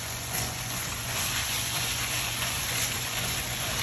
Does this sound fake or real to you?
fake